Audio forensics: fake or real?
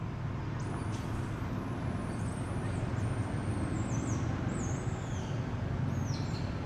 real